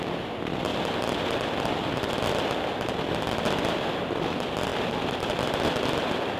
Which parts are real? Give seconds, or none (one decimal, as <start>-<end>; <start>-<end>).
0.0-4.7; 5.3-6.4